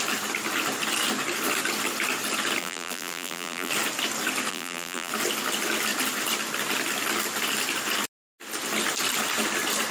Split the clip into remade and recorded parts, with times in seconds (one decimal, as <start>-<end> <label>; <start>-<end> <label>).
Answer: 0.0-2.6 recorded; 2.6-3.7 remade; 3.7-4.5 recorded; 4.5-5.1 remade; 5.1-9.9 recorded